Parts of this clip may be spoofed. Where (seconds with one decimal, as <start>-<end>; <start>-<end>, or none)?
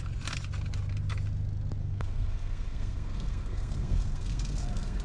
1.8-5.0